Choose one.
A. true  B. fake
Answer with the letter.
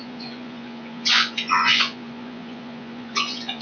B